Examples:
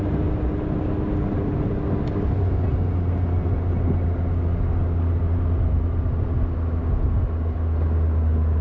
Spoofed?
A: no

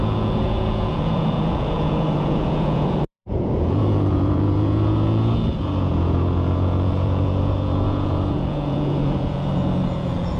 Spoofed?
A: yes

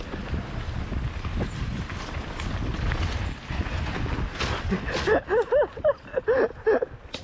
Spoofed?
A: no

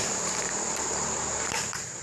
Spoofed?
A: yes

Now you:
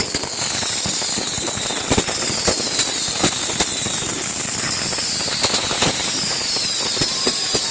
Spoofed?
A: no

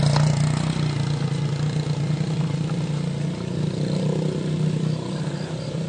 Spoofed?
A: no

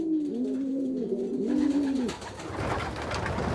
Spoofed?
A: no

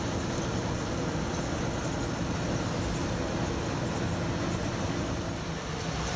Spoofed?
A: no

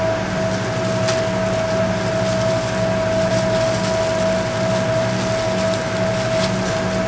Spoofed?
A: no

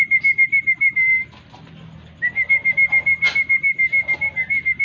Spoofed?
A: no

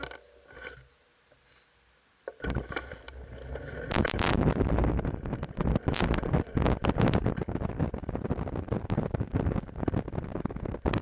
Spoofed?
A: no